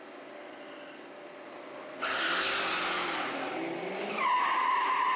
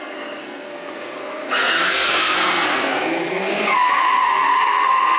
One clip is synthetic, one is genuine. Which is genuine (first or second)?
first